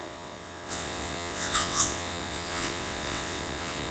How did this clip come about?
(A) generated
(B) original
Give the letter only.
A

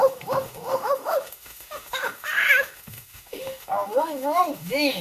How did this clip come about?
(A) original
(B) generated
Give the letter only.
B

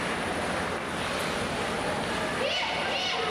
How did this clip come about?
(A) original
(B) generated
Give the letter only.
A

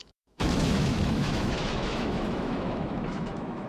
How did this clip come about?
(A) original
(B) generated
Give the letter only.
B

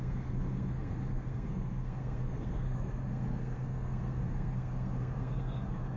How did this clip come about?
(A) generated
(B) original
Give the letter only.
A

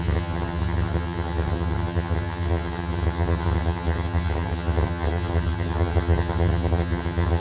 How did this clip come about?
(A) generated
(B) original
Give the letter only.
A